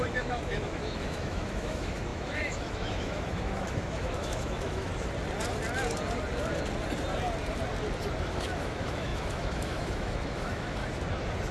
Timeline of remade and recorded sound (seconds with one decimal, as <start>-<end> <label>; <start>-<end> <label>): 0.0-4.9 remade; 4.9-8.3 recorded; 8.3-10.8 remade; 10.8-11.5 recorded